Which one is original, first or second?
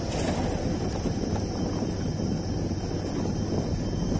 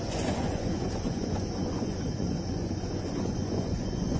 first